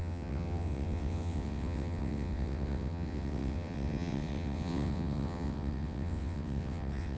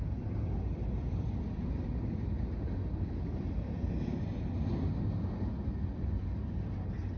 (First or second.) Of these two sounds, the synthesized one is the first